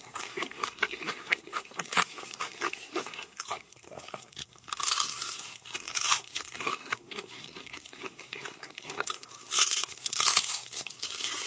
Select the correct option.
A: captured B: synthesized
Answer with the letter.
B